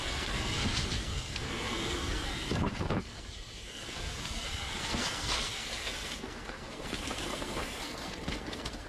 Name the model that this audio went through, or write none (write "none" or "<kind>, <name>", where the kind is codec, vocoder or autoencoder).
codec, SNAC